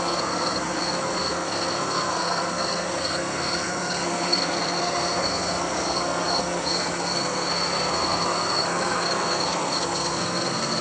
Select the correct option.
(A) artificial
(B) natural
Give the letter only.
A